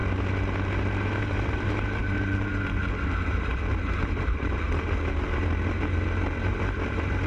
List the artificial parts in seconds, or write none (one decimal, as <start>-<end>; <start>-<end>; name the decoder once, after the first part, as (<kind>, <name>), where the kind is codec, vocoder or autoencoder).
1.2-7.3 (vocoder, BigVGAN v2)